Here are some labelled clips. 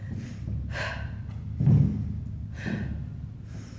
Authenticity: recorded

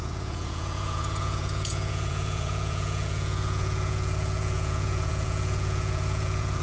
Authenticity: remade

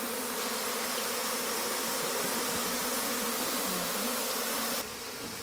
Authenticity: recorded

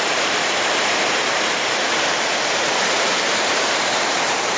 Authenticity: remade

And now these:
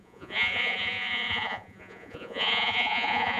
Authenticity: remade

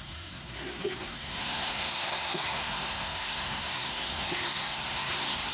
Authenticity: remade